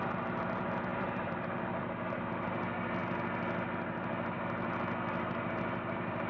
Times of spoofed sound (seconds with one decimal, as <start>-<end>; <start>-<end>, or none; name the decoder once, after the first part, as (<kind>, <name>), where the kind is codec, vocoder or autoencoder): 0.9-2.2 (vocoder, BigVGAN v2)